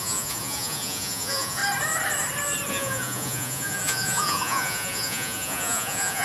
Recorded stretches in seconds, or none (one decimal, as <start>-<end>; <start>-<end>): 1.6-2.7